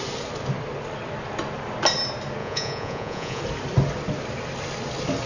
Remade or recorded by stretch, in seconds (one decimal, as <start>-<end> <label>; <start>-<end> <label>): 0.0-2.4 recorded; 2.4-3.4 remade; 3.4-5.3 recorded